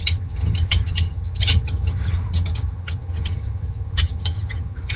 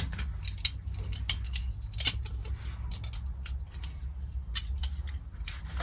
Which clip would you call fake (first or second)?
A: first